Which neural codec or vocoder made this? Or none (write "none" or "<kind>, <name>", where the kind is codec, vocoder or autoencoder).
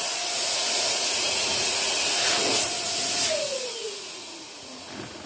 vocoder, Vocos